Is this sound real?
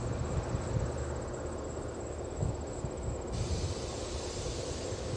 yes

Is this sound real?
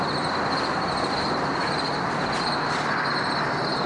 yes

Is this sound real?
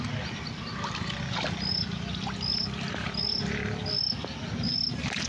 yes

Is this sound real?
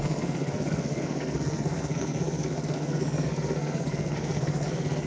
no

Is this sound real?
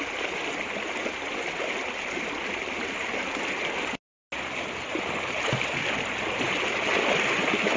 yes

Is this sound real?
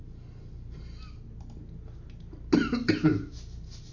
yes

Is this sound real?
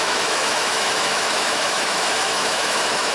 no